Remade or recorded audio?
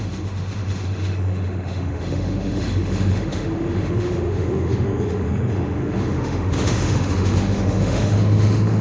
remade